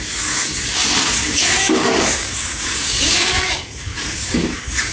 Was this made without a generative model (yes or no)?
no